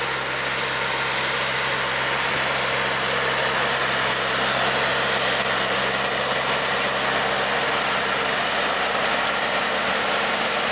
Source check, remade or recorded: recorded